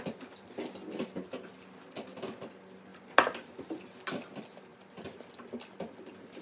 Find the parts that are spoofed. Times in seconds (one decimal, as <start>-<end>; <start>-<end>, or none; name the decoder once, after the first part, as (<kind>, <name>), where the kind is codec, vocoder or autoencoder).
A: none